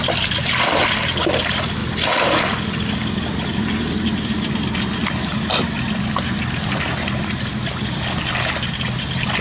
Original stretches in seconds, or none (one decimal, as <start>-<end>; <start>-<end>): 0.0-9.4